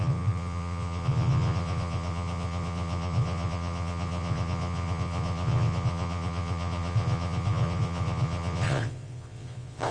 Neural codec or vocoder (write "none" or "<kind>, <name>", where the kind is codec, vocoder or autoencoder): vocoder, Vocos